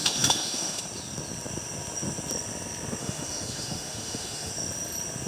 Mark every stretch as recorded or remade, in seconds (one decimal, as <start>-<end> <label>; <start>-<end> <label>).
0.0-0.8 remade; 0.8-3.0 recorded; 3.0-4.5 remade; 4.5-5.3 recorded